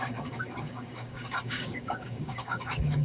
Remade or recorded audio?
remade